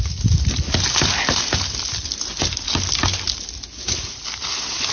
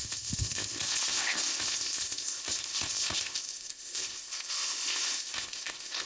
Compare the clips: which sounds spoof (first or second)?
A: second